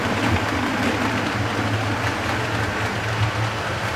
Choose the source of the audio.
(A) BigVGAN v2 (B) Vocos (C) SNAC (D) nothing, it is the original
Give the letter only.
D